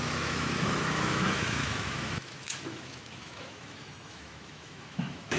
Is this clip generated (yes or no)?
yes